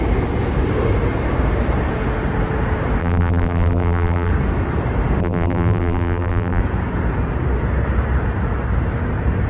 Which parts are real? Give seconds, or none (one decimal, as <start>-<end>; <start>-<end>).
0.0-3.0; 4.3-5.2; 6.6-9.5